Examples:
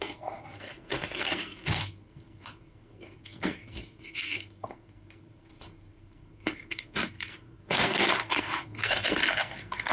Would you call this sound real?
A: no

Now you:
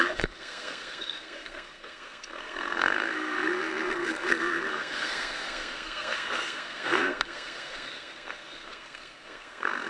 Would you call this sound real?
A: no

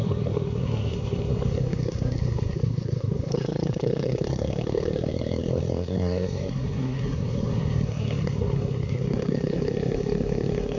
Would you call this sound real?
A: no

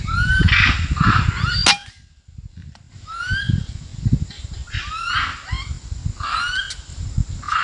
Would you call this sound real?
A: yes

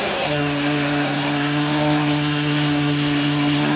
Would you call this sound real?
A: no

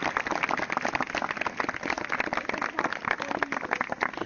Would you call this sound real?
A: yes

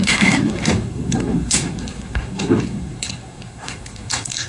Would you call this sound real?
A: no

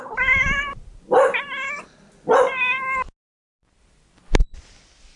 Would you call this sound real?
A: yes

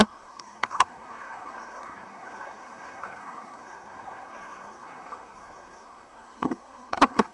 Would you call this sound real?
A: no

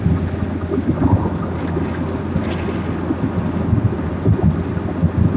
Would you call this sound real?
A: yes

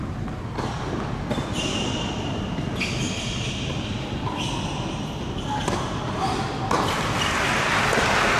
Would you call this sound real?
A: yes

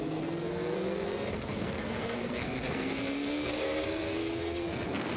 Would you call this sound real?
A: no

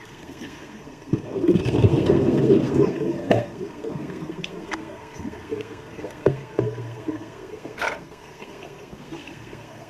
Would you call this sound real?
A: no